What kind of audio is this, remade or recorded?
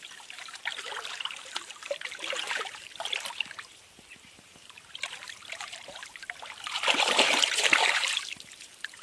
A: remade